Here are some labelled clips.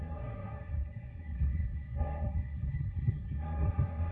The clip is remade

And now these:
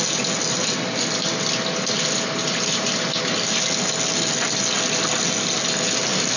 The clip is recorded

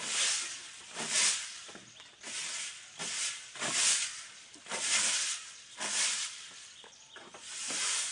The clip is recorded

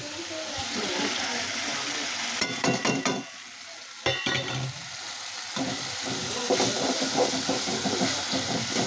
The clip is recorded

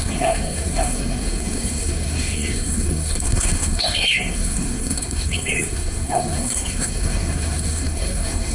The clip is remade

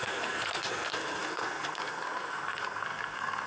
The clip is remade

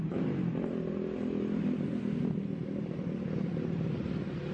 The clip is recorded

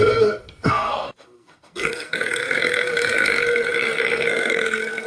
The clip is remade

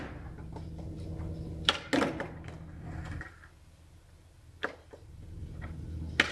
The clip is recorded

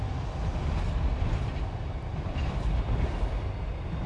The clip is recorded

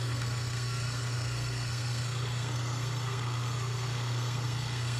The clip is remade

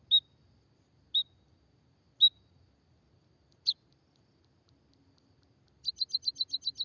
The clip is recorded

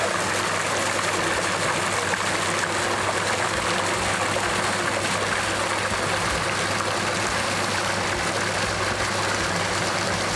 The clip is recorded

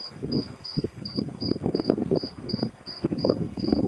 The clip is remade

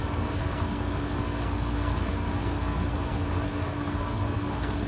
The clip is remade